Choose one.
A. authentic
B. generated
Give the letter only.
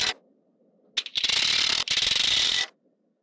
A